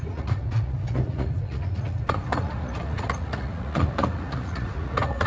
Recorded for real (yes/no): no